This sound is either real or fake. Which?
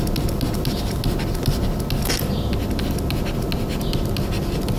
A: real